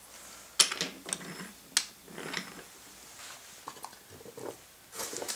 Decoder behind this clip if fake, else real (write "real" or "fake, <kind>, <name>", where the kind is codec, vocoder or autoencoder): real